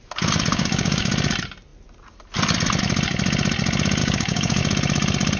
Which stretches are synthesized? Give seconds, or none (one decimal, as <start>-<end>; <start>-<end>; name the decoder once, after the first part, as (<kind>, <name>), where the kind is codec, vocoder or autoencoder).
0.5-1.1 (codec, DAC); 4.0-4.6